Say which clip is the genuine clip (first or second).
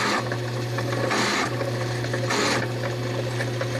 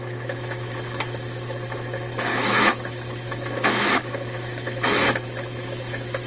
first